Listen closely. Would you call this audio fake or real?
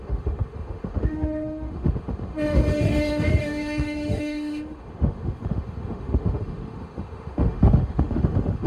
fake